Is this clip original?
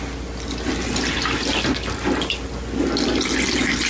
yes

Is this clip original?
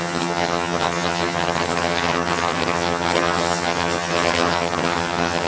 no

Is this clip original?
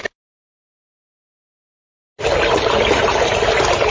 yes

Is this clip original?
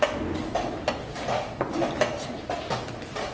yes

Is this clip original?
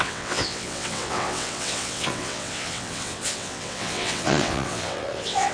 no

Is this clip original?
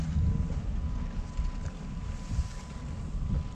yes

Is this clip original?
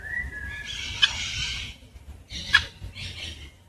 yes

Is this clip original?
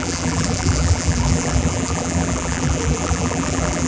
no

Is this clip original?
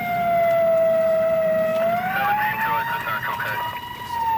yes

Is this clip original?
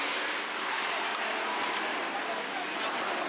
yes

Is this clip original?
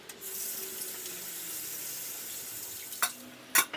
yes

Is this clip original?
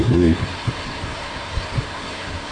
no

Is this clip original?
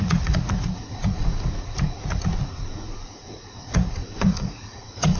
no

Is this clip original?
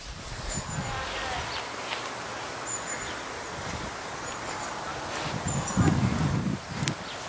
yes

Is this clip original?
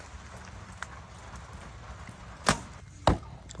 yes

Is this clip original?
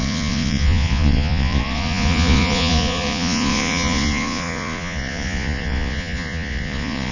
no